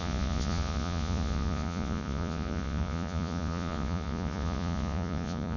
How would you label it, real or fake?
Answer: fake